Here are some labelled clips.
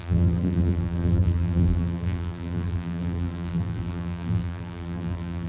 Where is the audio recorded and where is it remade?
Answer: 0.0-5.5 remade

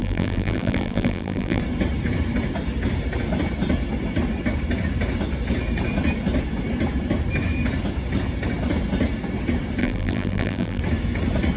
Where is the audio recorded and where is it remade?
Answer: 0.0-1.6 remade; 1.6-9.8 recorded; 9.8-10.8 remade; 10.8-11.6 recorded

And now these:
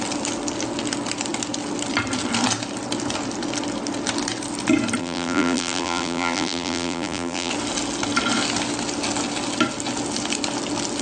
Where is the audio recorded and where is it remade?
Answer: 0.0-5.0 recorded; 5.0-7.5 remade; 7.5-11.0 recorded

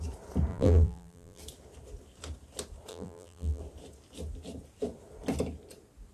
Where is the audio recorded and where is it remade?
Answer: 0.0-0.5 recorded; 0.5-1.4 remade; 1.4-2.9 recorded; 2.9-3.6 remade; 3.6-6.1 recorded